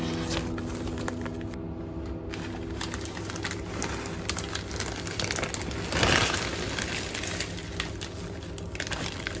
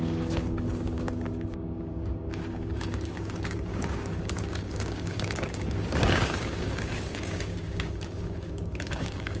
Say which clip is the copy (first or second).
second